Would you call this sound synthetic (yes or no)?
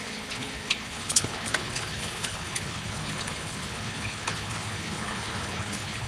yes